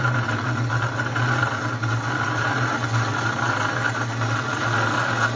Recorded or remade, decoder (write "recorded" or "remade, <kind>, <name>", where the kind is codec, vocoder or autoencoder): recorded